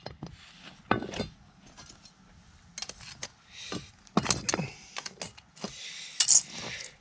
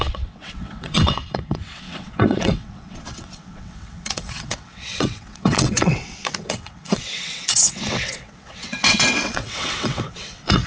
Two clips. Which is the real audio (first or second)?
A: first